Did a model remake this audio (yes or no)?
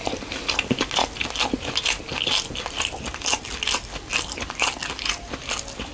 no